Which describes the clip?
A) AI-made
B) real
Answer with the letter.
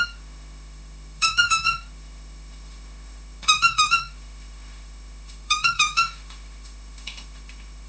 A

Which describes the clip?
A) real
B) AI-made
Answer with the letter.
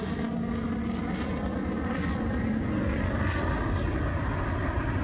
A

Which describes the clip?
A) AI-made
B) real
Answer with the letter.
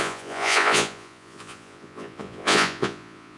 A